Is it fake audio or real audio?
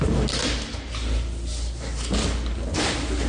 real